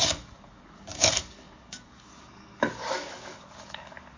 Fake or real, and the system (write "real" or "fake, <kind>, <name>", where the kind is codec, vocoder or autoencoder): fake, codec, DAC